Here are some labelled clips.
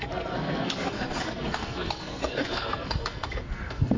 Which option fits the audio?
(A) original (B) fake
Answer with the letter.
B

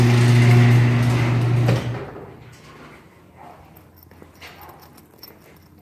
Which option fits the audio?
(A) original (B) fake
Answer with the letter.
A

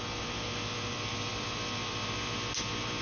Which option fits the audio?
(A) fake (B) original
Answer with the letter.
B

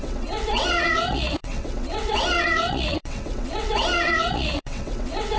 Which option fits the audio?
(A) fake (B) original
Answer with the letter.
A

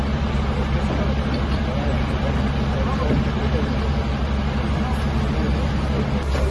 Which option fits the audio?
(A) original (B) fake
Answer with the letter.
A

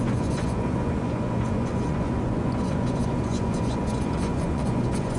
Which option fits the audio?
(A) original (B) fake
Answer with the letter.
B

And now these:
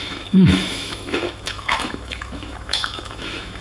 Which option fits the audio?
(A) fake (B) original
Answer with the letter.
A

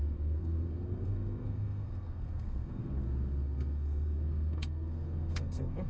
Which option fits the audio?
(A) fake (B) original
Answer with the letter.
A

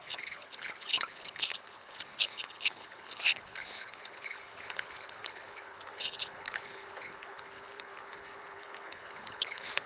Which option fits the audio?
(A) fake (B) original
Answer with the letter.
A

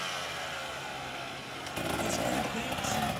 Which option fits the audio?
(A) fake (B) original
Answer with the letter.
B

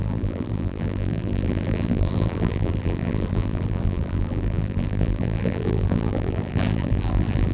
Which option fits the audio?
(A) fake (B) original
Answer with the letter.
A